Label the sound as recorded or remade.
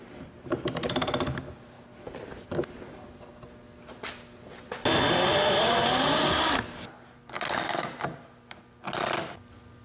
recorded